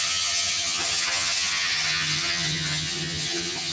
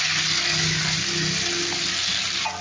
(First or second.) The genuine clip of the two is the second